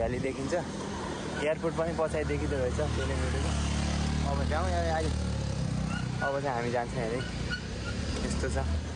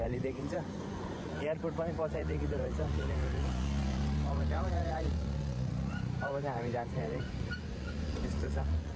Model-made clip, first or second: second